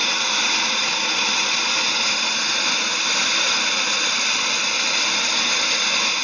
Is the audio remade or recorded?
recorded